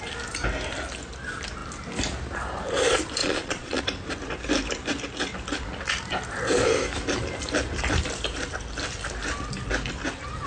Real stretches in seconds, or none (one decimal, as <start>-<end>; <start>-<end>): 0.0-3.2; 3.8-10.5